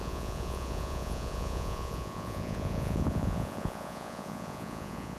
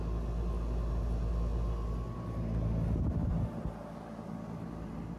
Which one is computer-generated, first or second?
first